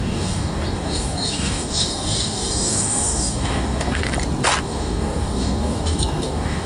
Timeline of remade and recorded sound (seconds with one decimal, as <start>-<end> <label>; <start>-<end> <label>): 0.0-4.0 remade; 4.0-4.6 recorded; 4.6-6.7 remade